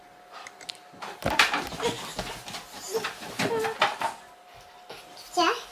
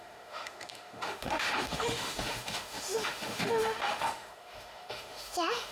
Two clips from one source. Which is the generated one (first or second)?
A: second